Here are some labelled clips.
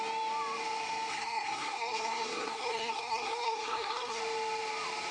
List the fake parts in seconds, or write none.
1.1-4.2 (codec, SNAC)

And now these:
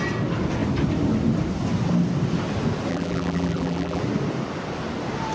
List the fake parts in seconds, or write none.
2.9-4.0 (vocoder, BigVGAN v2)

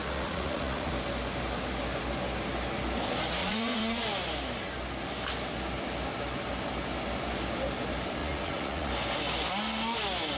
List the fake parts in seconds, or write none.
0.0-0.9 (vocoder, Vocos); 3.4-4.0; 8.2-8.9

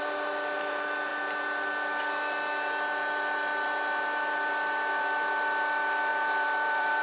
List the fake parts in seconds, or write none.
6.1-7.0 (vocoder, BigVGAN v2)

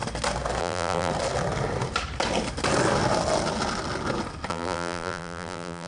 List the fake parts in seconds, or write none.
0.6-1.1 (vocoder, BigVGAN v2); 4.5-5.9

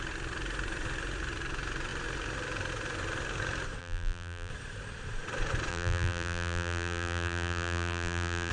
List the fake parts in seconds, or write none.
3.8-4.5 (vocoder, BigVGAN v2); 5.7-8.5

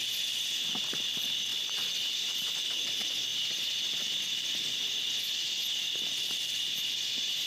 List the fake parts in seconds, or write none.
1.5-2.5 (vocoder, BigVGAN v2)